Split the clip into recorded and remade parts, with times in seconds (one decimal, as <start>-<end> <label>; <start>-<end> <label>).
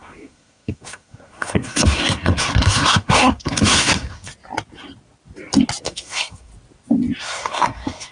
0.0-4.3 remade; 4.3-5.8 recorded; 5.8-6.5 remade; 6.5-7.2 recorded; 7.2-8.1 remade